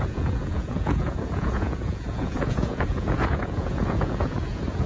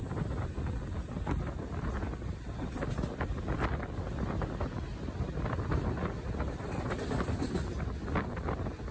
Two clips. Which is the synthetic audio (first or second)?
first